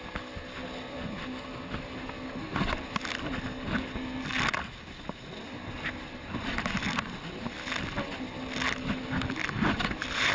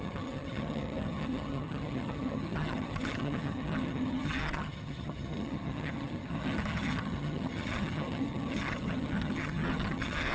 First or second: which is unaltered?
first